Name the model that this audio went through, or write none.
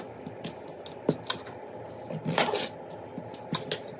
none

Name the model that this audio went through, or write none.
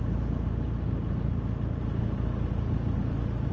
none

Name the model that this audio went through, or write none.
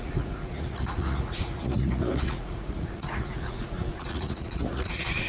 vocoder, Vocos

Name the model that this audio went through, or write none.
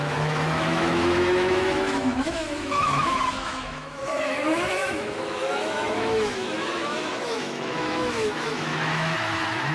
autoencoder, DAC-VAE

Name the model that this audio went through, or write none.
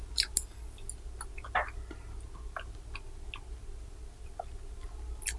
none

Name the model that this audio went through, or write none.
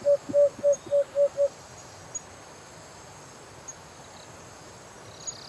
none